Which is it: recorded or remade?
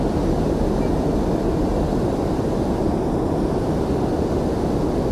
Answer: recorded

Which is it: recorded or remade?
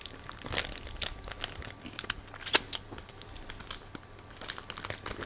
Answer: recorded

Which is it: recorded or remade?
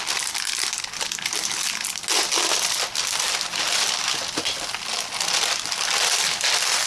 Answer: recorded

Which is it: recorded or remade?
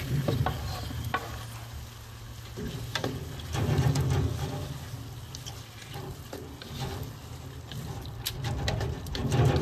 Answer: recorded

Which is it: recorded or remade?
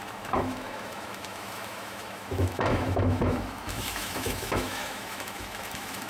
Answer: remade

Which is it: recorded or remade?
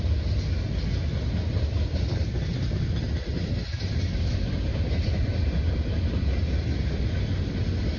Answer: recorded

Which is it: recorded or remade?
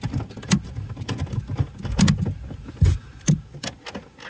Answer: recorded